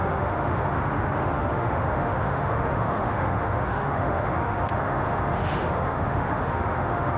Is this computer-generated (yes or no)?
yes